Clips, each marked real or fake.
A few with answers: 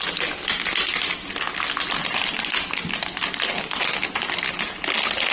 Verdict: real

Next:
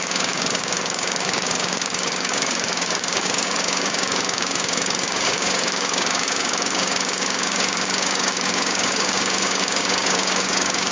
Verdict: fake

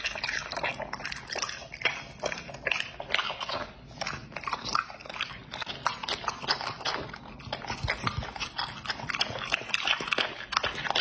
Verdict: real